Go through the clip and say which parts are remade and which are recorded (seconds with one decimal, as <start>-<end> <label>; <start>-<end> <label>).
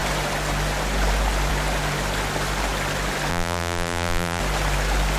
0.0-3.3 recorded; 3.3-4.4 remade; 4.4-5.2 recorded